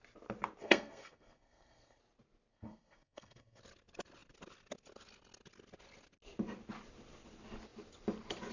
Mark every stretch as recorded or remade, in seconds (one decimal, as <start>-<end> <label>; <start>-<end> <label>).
0.0-0.6 recorded; 0.6-2.0 remade; 2.0-2.5 recorded; 2.5-3.6 remade; 3.6-8.5 recorded